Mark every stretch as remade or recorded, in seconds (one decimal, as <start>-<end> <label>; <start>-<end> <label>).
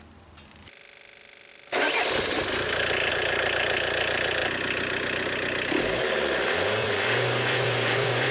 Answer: 0.0-6.8 recorded; 6.8-8.3 remade